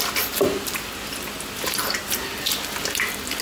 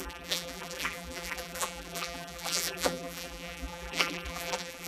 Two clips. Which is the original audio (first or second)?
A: first